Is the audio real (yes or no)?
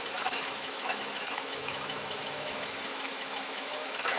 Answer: no